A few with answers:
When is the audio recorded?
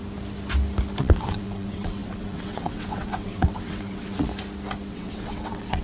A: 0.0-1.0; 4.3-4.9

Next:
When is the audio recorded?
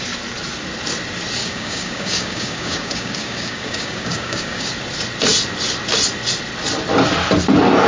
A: 0.0-1.4; 4.7-7.9